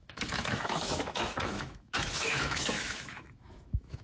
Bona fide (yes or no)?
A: no